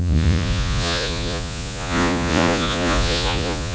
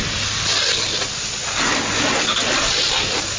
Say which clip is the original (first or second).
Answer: second